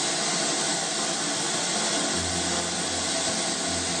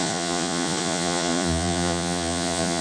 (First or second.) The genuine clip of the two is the first